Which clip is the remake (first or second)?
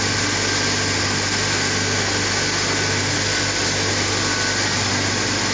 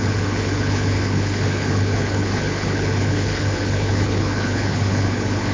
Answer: second